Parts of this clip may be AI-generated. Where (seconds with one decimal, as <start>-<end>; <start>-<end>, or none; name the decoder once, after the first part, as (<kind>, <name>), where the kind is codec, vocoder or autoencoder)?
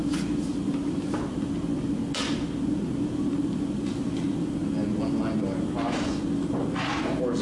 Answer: none